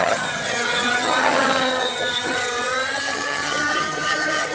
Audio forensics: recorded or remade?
remade